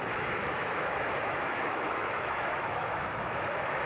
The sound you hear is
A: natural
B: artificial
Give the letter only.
B